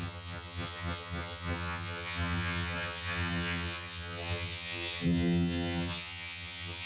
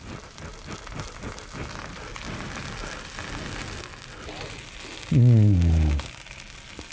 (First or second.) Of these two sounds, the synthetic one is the first